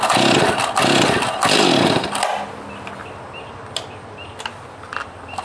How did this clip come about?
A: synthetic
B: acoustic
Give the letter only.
B